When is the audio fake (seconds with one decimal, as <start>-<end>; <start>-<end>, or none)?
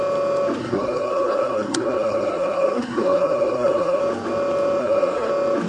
0.6-4.0; 4.8-5.3